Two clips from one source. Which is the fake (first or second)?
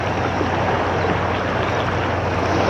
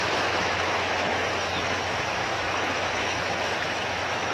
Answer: second